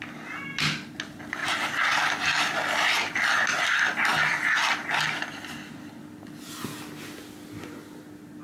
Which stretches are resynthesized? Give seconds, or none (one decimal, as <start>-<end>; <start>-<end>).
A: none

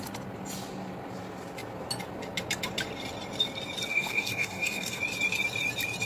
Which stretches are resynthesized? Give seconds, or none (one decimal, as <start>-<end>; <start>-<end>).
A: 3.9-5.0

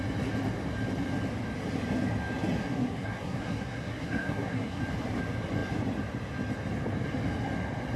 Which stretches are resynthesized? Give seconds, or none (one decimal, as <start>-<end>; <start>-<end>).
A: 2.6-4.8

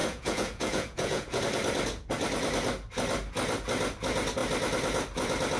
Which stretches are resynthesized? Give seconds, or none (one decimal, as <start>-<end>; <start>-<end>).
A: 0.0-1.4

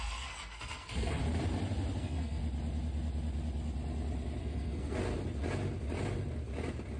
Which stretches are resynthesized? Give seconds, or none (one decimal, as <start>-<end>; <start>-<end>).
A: 0.0-1.2; 2.0-2.4; 4.4-5.0

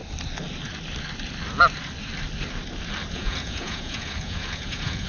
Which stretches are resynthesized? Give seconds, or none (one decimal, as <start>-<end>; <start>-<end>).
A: 3.1-5.1

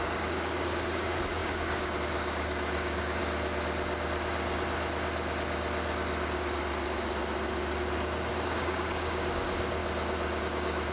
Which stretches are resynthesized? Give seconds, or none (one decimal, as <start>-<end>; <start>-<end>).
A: 0.0-3.2; 8.3-9.8; 10.4-10.9

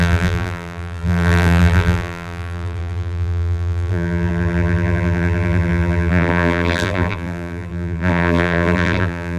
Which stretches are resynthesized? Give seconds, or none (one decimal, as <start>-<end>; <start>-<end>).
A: 0.0-9.4